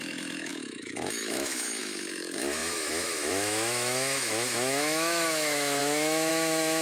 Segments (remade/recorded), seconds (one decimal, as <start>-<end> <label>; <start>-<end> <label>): 0.0-6.8 remade